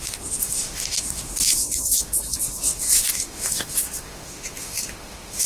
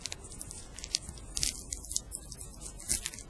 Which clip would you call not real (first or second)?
first